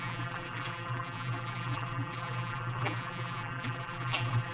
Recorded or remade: remade